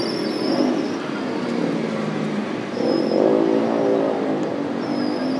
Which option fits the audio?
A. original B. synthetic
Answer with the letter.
A